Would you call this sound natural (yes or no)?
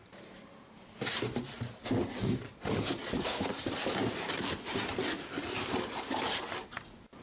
no